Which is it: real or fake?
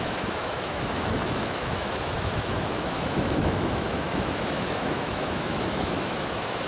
fake